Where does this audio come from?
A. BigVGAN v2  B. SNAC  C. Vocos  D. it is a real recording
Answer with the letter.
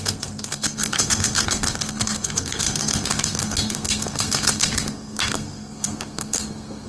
B